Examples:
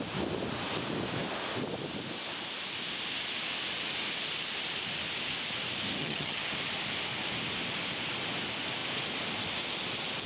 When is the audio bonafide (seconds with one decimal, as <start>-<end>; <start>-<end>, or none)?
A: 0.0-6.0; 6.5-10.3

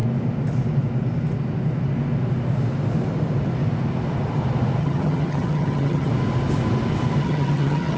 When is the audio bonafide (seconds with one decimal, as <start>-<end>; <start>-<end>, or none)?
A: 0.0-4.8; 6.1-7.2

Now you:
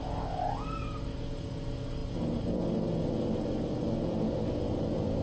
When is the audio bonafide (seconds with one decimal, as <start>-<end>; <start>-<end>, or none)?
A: 0.0-5.2

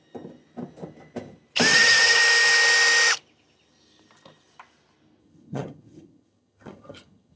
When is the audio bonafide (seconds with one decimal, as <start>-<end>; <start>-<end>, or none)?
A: 0.0-1.7; 2.2-5.2